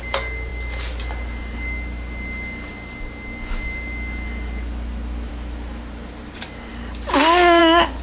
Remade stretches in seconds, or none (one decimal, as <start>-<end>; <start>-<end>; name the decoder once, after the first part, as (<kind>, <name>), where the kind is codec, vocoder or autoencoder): none